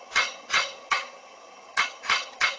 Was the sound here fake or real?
fake